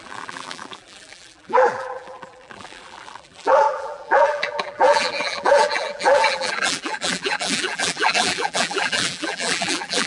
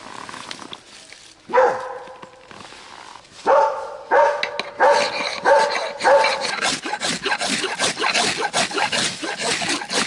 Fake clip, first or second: first